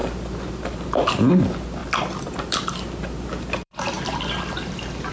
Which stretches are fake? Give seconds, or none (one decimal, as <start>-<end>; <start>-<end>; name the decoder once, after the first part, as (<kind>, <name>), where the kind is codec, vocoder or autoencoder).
0.0-1.3 (vocoder, BigVGAN v2); 1.8-5.1